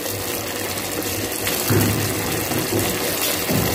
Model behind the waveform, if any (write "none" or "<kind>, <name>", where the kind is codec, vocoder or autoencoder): none